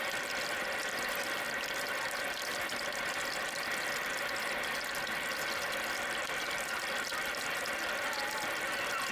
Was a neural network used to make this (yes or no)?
no